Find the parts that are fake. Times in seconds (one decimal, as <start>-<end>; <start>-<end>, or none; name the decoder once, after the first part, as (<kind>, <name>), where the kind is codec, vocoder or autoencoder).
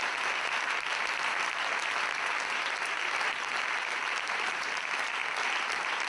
0.0-0.9 (vocoder, BigVGAN v2); 3.8-5.2